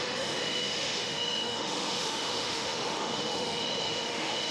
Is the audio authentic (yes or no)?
no